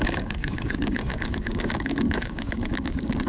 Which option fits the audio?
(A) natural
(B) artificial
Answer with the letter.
B